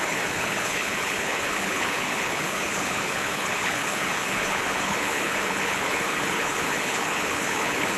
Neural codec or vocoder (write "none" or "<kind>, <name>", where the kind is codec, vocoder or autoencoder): codec, HILCodec